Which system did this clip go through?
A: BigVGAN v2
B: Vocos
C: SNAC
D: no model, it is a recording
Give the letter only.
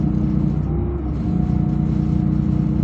D